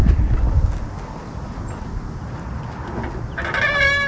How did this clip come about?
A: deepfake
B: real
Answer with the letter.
B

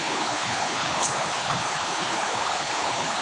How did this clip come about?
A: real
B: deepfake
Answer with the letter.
B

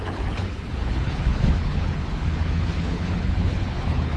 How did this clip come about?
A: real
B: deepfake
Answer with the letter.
B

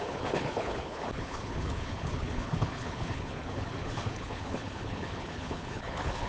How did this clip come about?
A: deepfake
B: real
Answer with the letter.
A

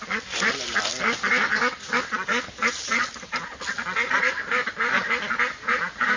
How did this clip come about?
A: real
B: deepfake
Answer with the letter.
A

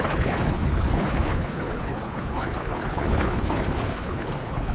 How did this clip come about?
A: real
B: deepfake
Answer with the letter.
B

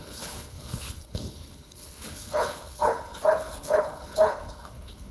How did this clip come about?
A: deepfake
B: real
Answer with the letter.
A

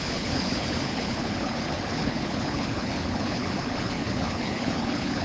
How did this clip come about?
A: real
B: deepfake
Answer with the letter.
B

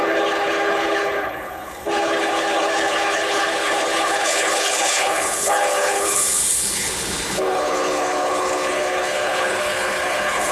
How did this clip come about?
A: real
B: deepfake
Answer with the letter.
B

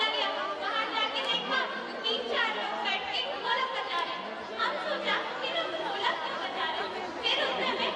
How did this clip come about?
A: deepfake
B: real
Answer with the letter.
B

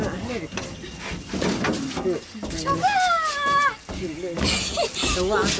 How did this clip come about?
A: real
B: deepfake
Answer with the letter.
A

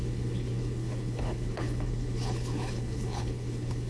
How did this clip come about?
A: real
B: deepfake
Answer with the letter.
B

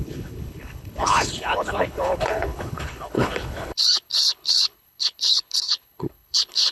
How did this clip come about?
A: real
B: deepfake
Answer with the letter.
B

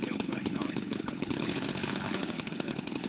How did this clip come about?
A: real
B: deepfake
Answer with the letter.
B